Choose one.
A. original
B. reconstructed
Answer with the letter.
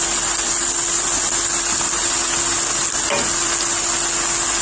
A